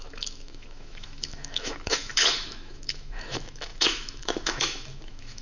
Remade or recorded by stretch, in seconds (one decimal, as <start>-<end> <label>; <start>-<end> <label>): 0.0-5.4 remade

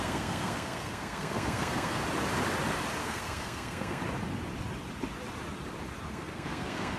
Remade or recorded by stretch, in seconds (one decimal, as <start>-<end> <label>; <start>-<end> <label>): 0.0-2.0 remade; 2.0-3.0 recorded; 3.0-4.0 remade; 4.0-6.1 recorded; 6.1-7.0 remade

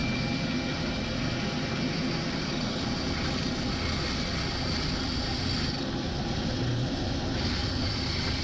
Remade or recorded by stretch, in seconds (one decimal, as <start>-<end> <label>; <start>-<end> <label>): 0.0-8.4 recorded

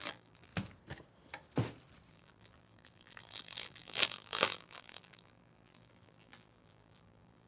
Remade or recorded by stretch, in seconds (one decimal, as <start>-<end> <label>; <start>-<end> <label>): 0.0-0.5 remade; 0.5-2.1 recorded; 2.1-7.5 remade

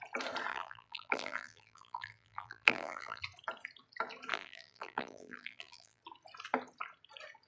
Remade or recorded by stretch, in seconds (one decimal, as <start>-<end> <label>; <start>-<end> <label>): 0.0-0.5 recorded; 0.5-3.2 remade; 3.2-4.3 recorded; 4.3-6.0 remade; 6.0-7.5 recorded

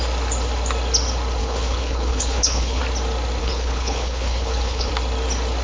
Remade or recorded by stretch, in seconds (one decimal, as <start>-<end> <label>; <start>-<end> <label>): 0.0-1.4 recorded; 1.4-2.8 remade; 2.8-3.4 recorded; 3.4-4.9 remade; 4.9-5.6 recorded

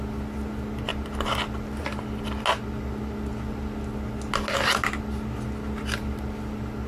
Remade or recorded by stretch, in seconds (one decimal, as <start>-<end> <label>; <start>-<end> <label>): 0.0-6.9 recorded

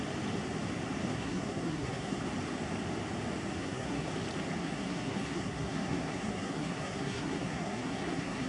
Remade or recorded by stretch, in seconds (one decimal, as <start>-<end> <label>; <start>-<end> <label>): 0.0-1.1 recorded; 1.1-2.2 remade; 2.2-3.6 recorded; 3.6-4.1 remade; 4.1-4.6 recorded; 4.6-8.5 remade